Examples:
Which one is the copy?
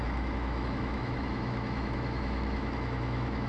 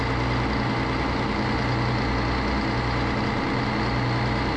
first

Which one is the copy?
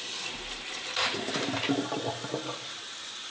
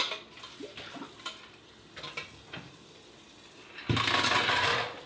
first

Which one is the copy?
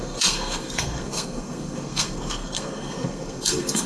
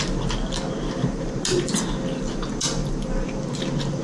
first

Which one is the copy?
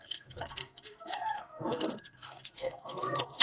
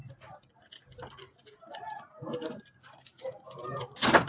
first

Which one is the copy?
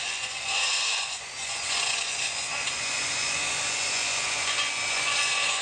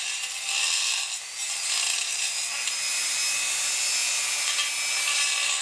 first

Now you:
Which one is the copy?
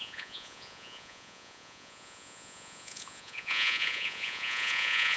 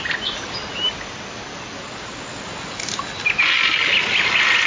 first